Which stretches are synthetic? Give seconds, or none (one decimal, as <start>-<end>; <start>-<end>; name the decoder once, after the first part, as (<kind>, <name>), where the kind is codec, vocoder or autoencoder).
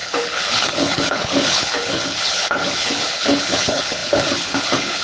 0.0-5.0 (codec, HILCodec)